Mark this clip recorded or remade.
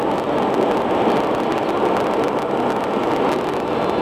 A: recorded